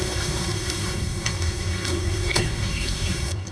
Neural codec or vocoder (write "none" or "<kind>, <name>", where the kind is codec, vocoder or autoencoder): codec, SNAC